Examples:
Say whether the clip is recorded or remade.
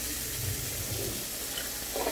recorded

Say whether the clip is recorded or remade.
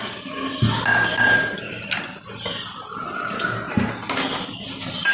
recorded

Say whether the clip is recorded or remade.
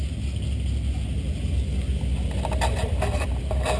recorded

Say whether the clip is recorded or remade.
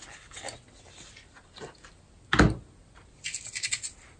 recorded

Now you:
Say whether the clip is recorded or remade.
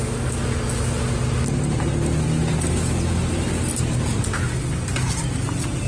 recorded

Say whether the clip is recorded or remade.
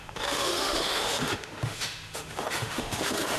remade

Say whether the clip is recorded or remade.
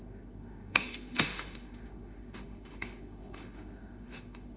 remade